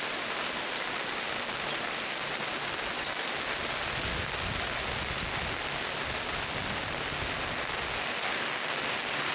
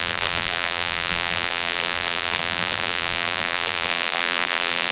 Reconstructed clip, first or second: second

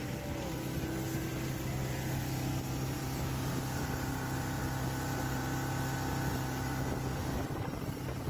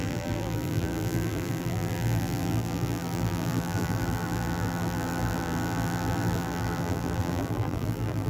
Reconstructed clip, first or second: second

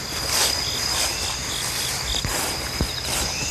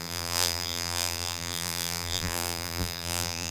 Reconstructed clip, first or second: second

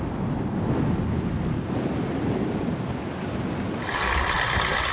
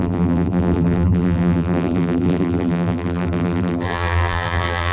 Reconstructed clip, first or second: second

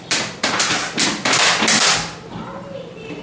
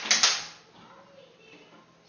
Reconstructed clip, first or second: first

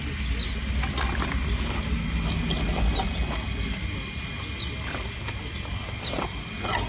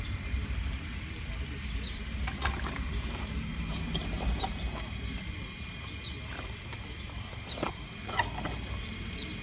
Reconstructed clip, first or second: second